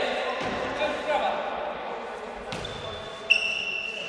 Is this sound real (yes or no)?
yes